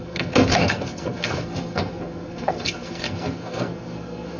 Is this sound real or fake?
fake